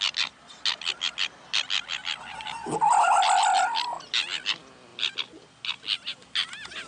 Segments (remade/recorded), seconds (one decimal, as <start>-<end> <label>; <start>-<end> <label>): 0.0-6.9 recorded